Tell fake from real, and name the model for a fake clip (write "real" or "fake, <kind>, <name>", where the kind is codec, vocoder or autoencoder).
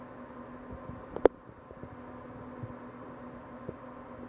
real